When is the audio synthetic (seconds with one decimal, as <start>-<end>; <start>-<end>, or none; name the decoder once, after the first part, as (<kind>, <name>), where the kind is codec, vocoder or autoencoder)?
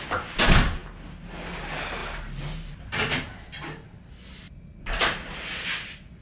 none